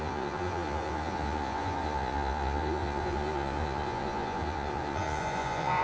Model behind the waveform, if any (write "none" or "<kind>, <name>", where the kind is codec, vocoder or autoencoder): vocoder, Vocos